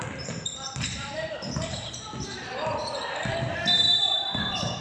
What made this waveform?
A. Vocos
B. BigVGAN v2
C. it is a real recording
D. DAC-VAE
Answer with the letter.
B